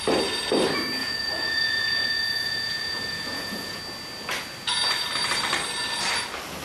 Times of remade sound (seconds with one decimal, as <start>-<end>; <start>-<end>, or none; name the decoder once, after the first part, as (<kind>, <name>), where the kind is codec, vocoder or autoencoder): 1.0-3.8 (vocoder, Vocos)